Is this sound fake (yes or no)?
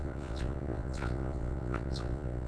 yes